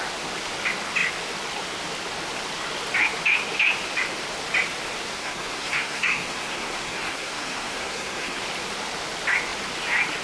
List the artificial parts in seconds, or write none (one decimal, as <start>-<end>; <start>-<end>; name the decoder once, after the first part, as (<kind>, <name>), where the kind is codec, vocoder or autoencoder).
5.2-8.4 (codec, SNAC)